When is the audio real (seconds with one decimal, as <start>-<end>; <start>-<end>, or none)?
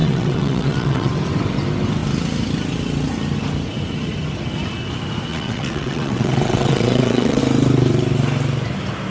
1.1-5.3; 7.4-9.1